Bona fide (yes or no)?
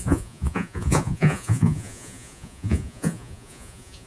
no